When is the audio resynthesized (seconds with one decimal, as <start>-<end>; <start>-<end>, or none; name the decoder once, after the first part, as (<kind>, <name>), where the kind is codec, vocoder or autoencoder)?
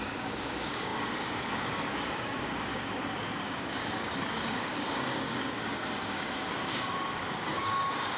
0.0-8.2 (codec, DAC)